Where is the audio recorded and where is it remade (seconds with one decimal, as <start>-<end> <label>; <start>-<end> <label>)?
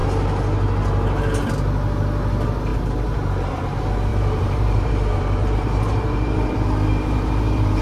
0.0-2.7 recorded; 2.7-3.6 remade; 3.6-4.1 recorded; 4.1-7.8 remade